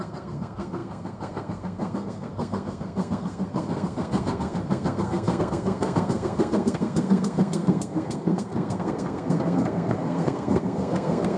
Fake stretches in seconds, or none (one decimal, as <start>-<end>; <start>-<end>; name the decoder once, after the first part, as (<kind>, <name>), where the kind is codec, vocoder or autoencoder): 0.0-11.4 (codec, SNAC)